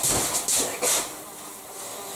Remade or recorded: recorded